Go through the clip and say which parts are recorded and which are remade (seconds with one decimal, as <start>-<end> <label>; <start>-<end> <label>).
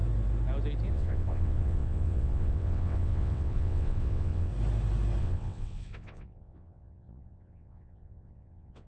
0.0-0.9 recorded; 0.9-4.5 remade; 4.5-5.2 recorded; 5.2-8.9 remade